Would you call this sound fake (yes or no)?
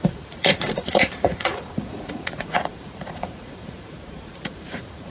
yes